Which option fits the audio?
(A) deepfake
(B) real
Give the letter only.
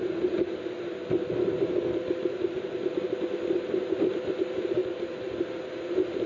B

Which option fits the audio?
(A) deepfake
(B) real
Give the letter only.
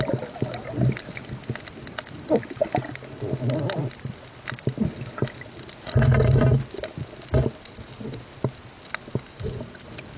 B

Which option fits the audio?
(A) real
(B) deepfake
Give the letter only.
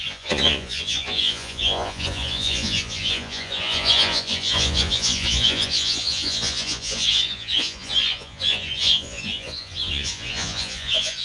B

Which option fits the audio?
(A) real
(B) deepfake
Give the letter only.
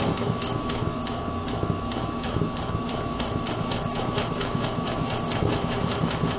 B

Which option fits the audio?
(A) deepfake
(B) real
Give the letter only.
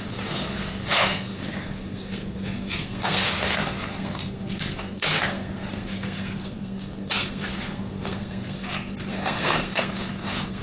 A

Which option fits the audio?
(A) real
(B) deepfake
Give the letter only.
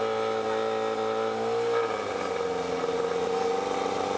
A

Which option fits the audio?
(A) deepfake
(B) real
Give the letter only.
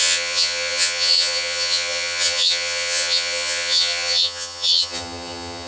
A